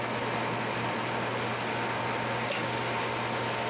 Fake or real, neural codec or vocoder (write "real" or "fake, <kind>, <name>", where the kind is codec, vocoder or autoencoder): real